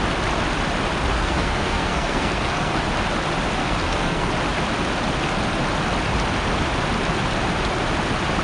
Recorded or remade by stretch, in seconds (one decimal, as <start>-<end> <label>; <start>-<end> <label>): 0.0-1.1 recorded; 1.1-2.8 remade; 2.8-3.6 recorded; 3.6-4.3 remade; 4.3-8.4 recorded